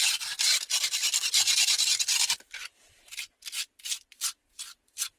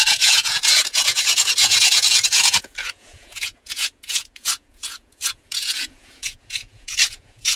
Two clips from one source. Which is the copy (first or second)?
second